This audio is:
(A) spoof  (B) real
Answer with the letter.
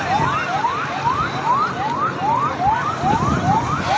B